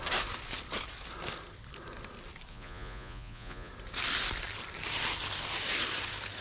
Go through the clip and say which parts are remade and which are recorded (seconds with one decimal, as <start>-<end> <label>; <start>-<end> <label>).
0.0-2.5 recorded; 2.5-3.7 remade; 3.7-6.4 recorded